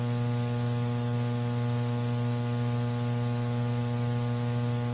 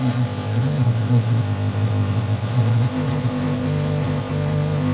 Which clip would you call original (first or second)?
first